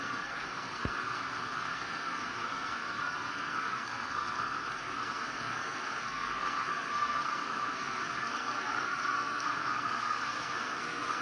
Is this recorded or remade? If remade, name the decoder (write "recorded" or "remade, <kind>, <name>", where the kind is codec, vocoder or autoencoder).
remade, codec, SNAC